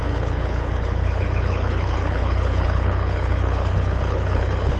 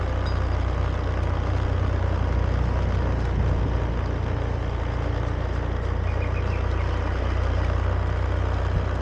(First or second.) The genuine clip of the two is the second